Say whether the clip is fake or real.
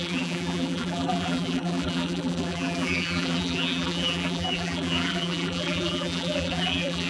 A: fake